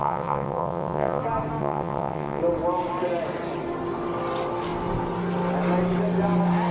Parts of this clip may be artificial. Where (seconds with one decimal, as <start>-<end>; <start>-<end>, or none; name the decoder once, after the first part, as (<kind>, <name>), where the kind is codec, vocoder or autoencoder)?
0.0-1.2 (vocoder, WaveNeXt); 1.6-2.4